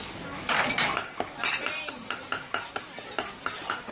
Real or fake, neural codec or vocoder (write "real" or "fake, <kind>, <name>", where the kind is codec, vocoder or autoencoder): real